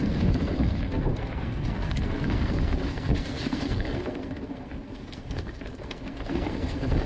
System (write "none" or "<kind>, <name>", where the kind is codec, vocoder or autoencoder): codec, SNAC